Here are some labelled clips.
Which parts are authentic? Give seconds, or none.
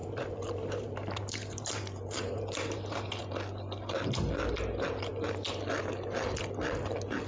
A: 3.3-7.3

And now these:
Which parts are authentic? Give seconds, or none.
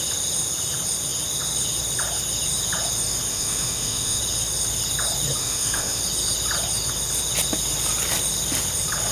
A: 0.0-3.3; 4.2-5.4; 6.0-9.1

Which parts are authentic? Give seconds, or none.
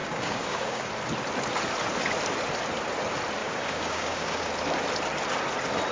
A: 0.9-3.4; 4.5-5.9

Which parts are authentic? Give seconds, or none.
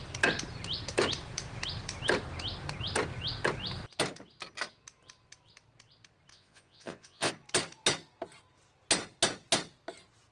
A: 0.0-6.3; 7.3-10.3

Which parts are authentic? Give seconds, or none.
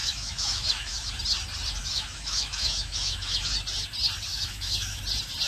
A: 1.1-1.8; 3.5-4.3; 5.0-5.5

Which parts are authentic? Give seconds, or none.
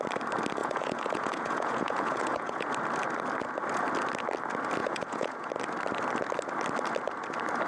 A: 0.0-0.6; 2.7-4.8; 5.5-7.7